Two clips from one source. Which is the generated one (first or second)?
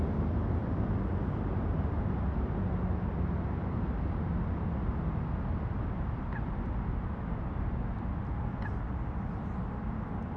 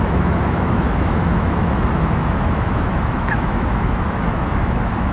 second